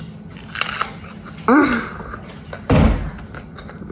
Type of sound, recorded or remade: recorded